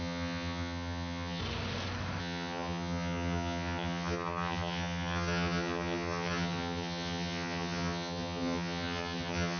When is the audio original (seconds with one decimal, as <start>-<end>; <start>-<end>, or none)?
1.4-2.2